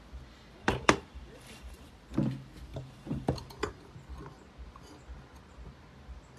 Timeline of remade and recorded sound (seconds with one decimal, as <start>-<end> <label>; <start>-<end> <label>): 0.0-0.6 recorded; 0.6-1.9 remade; 1.9-2.7 recorded; 2.7-3.5 remade; 3.5-6.4 recorded

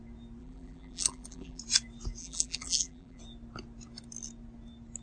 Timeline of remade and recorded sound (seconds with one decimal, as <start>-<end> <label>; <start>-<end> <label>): 0.0-0.4 recorded; 0.4-1.6 remade; 1.6-2.2 recorded; 2.2-3.2 remade; 3.2-5.0 recorded

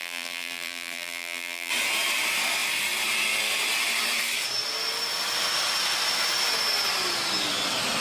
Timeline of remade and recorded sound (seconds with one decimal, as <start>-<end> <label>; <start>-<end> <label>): 0.0-1.7 remade; 1.7-8.0 recorded